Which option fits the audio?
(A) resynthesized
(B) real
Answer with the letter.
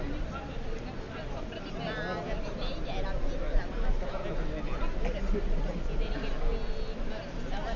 B